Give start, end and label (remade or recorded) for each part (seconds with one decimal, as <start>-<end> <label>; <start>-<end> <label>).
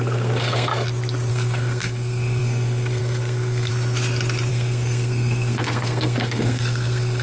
0.0-0.7 remade; 0.7-1.3 recorded; 1.3-3.7 remade; 3.7-4.5 recorded; 4.5-7.2 remade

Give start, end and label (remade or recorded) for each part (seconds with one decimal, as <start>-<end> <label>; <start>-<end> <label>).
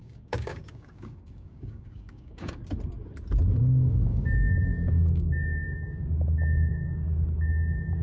0.0-2.6 remade; 2.6-3.6 recorded; 3.6-8.0 remade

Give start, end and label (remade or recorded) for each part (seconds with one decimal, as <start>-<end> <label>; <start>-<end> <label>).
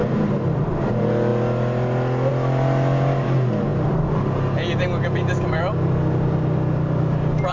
0.0-7.5 recorded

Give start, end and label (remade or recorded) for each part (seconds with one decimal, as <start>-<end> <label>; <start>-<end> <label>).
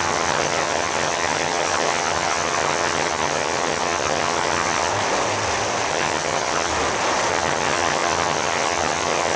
0.0-4.9 remade; 4.9-5.9 recorded; 5.9-6.7 remade; 6.7-7.3 recorded; 7.3-9.4 remade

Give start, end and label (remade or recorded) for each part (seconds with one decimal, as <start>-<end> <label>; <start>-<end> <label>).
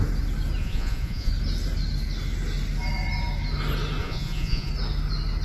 0.0-0.6 recorded; 0.6-1.3 remade; 1.3-4.0 recorded; 4.0-4.7 remade; 4.7-5.4 recorded